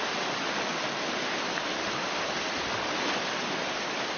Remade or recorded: recorded